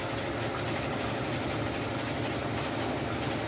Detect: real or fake real